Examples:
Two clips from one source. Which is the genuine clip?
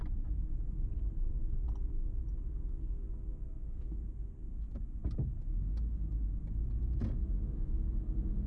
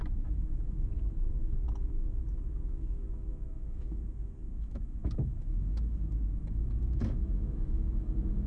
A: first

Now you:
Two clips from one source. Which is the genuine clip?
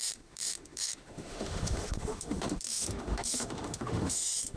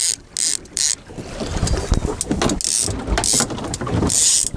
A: second